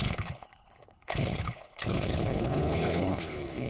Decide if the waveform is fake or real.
fake